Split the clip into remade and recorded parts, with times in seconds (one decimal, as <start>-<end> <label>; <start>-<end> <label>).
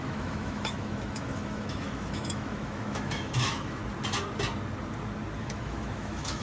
0.0-3.8 remade; 3.8-5.4 recorded; 5.4-6.4 remade